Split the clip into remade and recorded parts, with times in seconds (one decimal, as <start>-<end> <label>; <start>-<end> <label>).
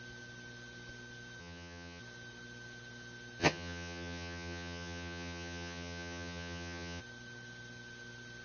0.0-1.4 recorded; 1.4-2.0 remade; 2.0-3.4 recorded; 3.4-7.0 remade; 7.0-8.4 recorded